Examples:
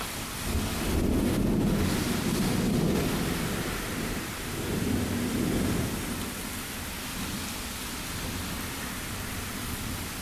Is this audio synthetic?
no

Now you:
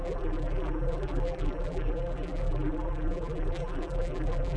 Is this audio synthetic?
yes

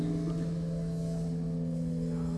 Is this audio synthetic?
no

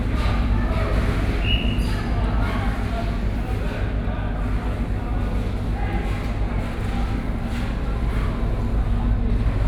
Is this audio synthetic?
no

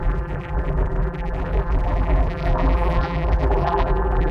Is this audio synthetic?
yes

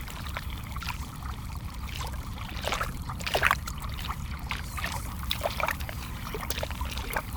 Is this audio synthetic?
yes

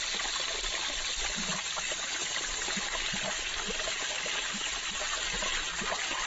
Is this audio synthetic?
no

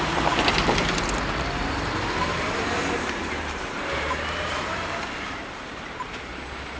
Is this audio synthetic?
yes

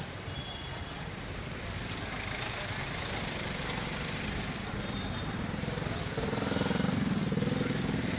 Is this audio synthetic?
yes